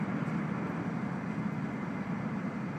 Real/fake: real